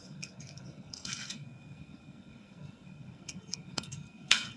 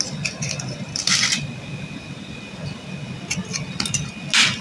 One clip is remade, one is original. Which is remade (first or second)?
first